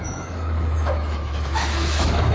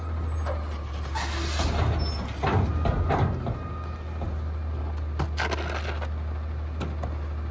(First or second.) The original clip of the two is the second